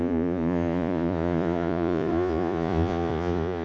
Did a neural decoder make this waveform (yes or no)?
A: yes